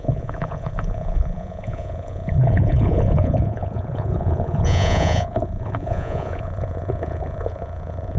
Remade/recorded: remade